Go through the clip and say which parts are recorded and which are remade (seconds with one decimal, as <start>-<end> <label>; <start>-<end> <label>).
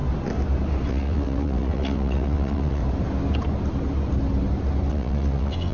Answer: 0.0-0.9 recorded; 0.9-2.8 remade; 2.8-4.9 recorded; 4.9-5.7 remade